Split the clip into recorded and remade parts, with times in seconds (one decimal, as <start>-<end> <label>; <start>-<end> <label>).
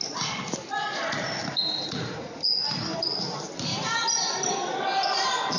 0.0-1.8 recorded; 1.8-2.4 remade; 2.4-5.6 recorded